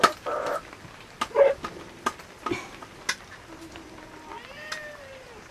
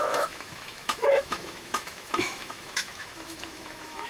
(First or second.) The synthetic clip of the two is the second